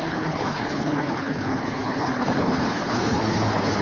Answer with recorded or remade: remade